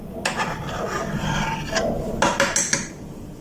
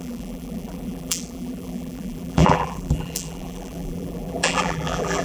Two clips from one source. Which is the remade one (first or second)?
second